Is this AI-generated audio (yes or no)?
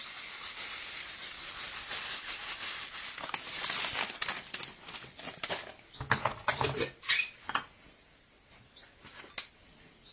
no